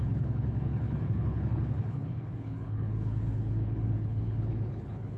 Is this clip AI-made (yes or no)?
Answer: yes